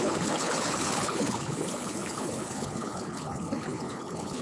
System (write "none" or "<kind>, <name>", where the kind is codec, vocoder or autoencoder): codec, HILCodec